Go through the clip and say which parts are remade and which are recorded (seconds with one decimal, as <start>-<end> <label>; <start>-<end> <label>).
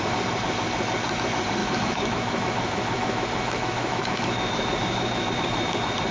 0.0-1.6 recorded; 1.6-5.3 remade; 5.3-6.1 recorded